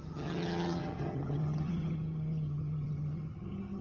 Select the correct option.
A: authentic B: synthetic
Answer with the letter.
B